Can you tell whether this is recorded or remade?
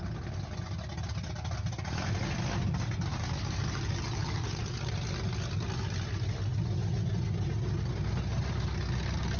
recorded